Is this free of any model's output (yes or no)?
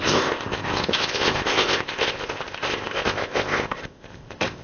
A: no